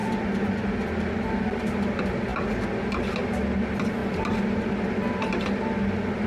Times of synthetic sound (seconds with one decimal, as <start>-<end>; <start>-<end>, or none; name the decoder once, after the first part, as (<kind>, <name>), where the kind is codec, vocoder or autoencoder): none